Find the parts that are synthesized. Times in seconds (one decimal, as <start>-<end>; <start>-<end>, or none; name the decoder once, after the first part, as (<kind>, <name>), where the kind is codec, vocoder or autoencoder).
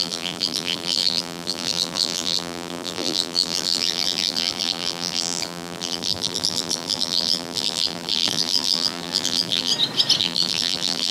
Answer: 0.0-9.7 (vocoder, BigVGAN v2); 10.2-11.1